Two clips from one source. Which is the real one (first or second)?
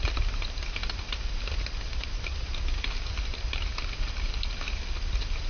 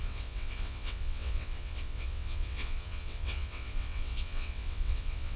first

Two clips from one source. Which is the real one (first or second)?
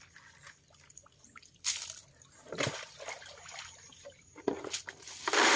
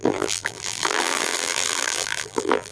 first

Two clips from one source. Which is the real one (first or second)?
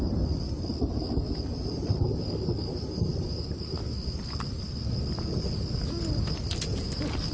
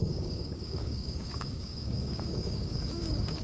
first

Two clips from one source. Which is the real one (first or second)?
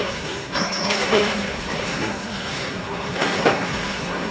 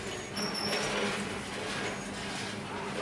second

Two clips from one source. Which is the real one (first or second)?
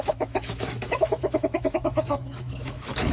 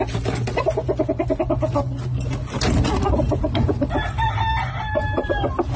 second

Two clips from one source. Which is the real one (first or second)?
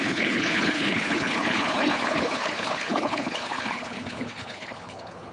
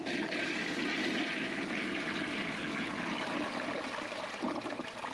second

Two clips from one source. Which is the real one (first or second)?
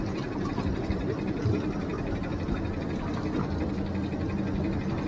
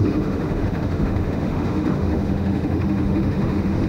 first